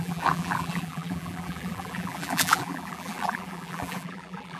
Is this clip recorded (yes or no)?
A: no